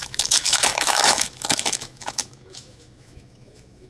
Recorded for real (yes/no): no